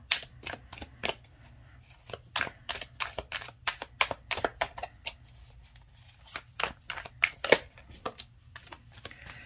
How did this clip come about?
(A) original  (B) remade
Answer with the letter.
A